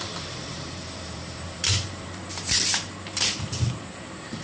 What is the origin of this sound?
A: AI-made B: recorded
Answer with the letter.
A